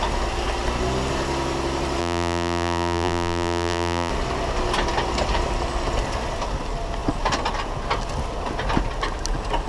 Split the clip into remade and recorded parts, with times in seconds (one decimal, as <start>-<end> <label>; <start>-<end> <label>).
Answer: 0.0-2.0 recorded; 2.0-4.1 remade; 4.1-9.7 recorded